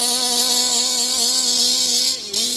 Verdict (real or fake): real